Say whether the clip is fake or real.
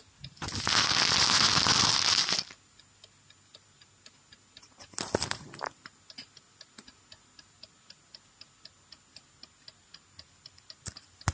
real